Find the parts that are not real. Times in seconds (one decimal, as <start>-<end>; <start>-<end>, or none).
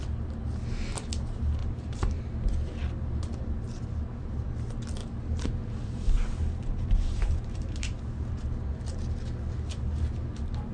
1.6-2.2; 5.0-8.0